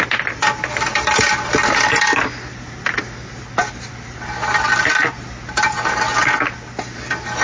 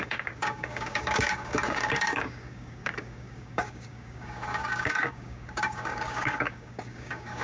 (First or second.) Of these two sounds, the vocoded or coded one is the second